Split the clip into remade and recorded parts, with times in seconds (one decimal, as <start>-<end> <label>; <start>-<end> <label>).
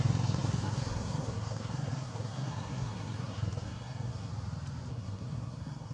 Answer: 0.0-4.3 remade; 4.3-4.9 recorded; 4.9-5.9 remade